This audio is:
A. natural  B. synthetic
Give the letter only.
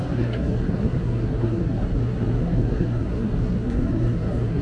B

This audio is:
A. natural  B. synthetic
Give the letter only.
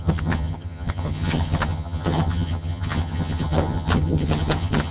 B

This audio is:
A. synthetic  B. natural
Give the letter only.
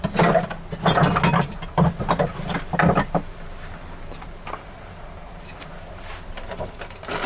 B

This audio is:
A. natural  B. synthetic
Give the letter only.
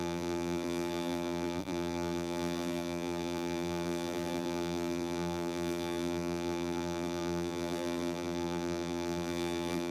B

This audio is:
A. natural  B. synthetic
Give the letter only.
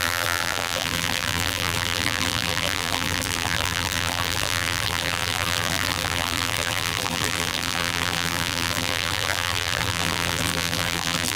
B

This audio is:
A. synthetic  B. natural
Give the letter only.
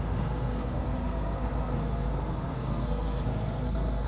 A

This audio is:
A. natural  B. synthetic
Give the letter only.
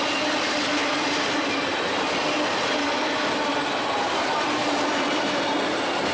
A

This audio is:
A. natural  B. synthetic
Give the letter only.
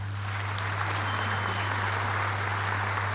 A